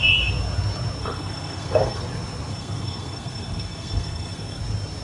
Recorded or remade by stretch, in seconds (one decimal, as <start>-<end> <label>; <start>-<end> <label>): 0.0-1.0 recorded; 1.0-2.0 remade; 2.0-2.5 recorded; 2.5-4.6 remade; 4.6-5.0 recorded

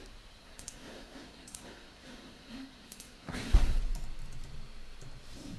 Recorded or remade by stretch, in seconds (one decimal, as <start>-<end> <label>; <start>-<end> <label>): 0.0-0.4 recorded; 0.4-3.8 remade; 3.8-5.6 recorded

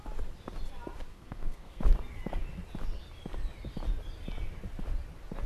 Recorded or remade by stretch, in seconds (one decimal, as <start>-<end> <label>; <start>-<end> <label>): 0.0-1.1 recorded; 1.1-1.8 remade; 1.8-5.5 recorded

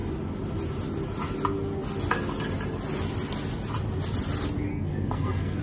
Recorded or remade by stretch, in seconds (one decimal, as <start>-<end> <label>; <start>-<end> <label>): 0.0-4.7 recorded; 4.7-5.6 remade